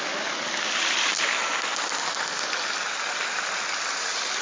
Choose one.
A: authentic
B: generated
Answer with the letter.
A